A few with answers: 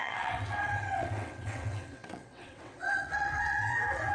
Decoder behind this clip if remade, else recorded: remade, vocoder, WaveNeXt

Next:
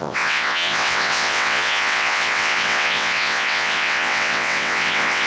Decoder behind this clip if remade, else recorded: remade, vocoder, WaveNeXt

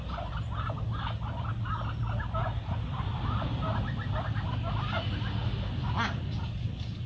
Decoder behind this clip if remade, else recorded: recorded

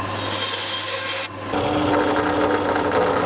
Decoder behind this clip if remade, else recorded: recorded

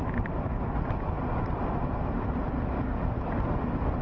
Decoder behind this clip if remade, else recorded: recorded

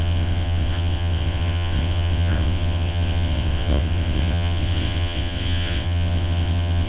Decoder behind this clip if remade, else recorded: remade, vocoder, WaveNeXt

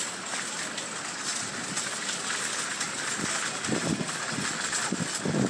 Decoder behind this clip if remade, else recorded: recorded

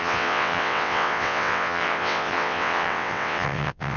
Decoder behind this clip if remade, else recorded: remade, vocoder, WaveNeXt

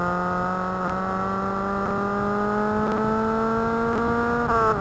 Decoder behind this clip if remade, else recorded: recorded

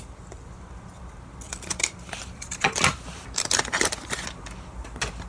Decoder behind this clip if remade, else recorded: recorded